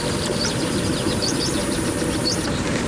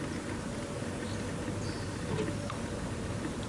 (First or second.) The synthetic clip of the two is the first